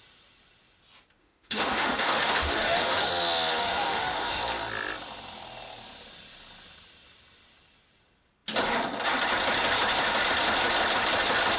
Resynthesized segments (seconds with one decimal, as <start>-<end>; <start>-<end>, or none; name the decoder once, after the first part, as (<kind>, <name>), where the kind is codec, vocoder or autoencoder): 1.2-3.1 (autoencoder, DAC-VAE); 3.6-4.4